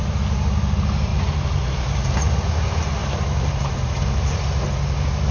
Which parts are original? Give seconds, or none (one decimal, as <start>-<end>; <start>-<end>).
0.0-1.1; 2.4-3.0; 4.4-5.3